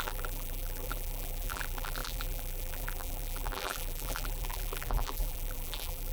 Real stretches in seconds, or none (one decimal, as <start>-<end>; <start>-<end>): none

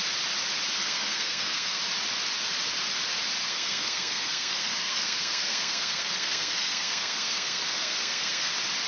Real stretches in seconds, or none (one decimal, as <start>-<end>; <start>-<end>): 0.0-0.8; 1.8-3.4; 8.5-8.9

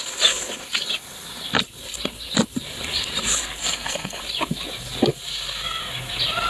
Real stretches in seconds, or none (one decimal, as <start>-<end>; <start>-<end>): 0.0-3.6; 4.2-6.5

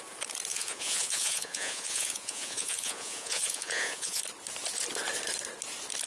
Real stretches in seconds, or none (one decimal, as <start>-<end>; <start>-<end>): 0.0-0.5; 4.2-6.1

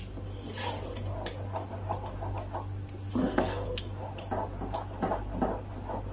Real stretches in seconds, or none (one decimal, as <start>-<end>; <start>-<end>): 0.0-3.2; 3.8-6.1

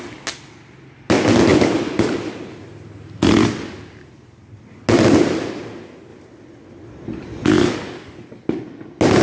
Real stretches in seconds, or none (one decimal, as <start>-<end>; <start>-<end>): 0.0-9.2

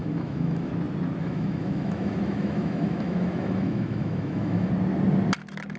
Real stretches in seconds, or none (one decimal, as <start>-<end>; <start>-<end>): 0.7-1.2; 4.7-5.8

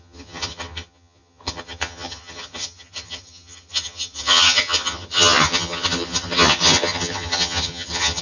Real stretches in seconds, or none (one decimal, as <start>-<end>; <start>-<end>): none